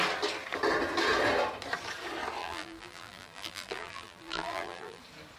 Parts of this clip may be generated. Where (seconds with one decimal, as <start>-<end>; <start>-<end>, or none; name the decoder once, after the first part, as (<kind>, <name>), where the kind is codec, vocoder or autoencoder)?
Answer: 2.4-5.0 (vocoder, BigVGAN v2)